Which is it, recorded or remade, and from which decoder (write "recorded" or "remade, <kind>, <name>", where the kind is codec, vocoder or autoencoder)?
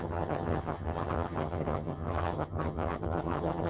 remade, vocoder, HiFi-GAN